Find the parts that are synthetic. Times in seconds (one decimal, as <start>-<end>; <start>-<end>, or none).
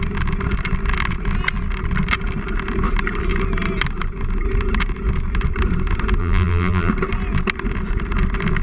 6.2-6.9